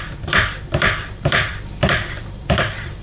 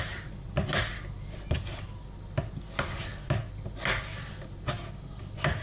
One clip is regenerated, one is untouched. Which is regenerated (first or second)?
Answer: first